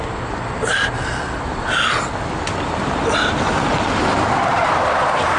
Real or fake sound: real